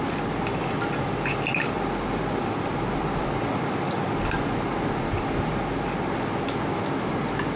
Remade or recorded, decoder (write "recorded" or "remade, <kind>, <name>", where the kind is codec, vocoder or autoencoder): recorded